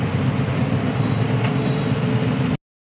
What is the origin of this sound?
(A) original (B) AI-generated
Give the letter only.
A